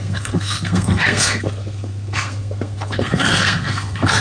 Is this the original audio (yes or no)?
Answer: no